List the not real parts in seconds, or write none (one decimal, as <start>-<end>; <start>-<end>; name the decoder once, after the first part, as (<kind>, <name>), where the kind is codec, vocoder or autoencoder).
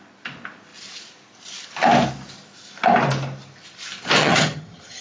4.2-5.0 (vocoder, HiFi-GAN)